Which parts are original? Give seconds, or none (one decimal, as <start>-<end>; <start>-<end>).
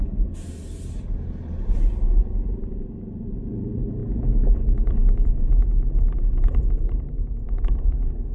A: none